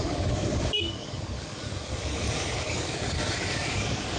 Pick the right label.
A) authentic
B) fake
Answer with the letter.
B